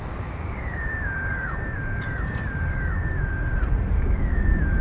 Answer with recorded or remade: recorded